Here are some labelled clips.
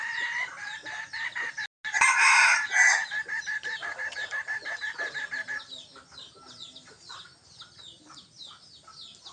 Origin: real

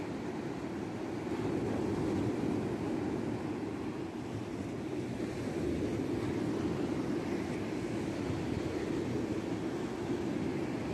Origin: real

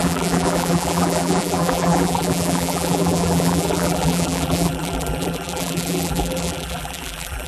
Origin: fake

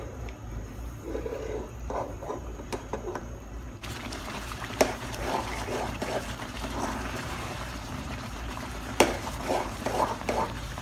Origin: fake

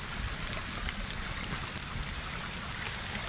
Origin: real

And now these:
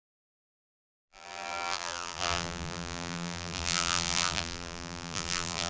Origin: fake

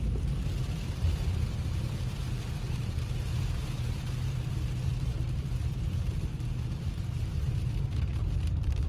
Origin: fake